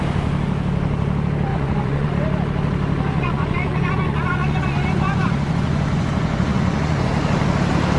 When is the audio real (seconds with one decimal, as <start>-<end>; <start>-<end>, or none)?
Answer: 0.0-1.5; 2.1-3.1; 7.1-8.0